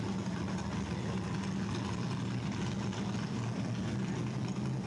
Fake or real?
real